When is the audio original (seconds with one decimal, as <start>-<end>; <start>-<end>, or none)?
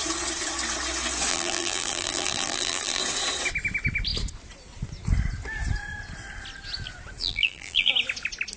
0.0-1.3; 3.0-7.2; 7.9-8.6